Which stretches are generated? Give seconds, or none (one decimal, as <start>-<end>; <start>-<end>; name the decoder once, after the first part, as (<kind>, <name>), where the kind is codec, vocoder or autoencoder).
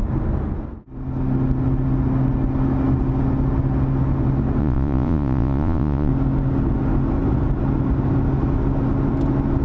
4.6-6.1 (vocoder, Vocos)